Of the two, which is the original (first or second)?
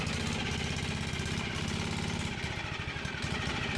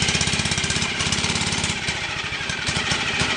first